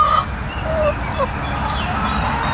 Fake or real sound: real